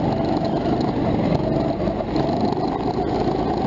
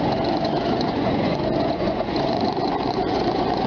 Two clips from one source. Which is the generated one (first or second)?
second